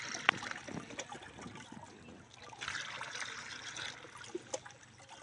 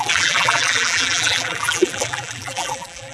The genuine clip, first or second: first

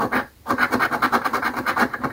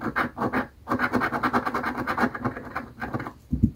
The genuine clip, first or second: second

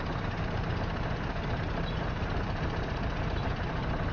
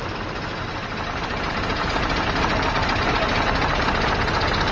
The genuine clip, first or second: second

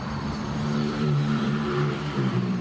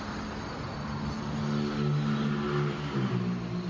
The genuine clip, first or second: second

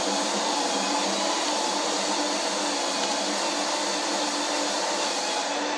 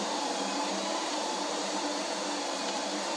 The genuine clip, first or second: first